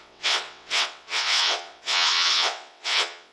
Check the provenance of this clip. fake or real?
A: fake